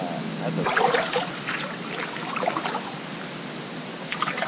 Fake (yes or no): no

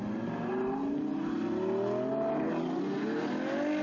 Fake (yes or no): no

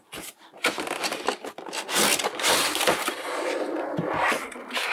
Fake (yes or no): no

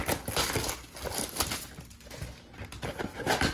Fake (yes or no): no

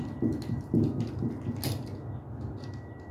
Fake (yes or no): no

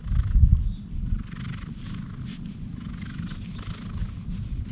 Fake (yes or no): no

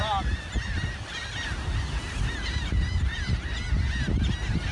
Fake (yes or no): no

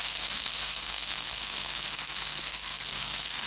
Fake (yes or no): yes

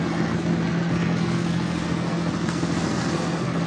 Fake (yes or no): yes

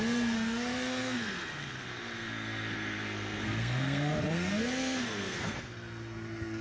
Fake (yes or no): yes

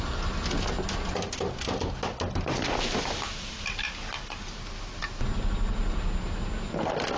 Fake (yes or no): no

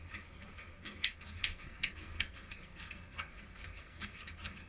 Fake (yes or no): yes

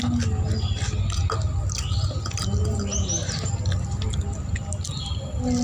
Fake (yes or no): no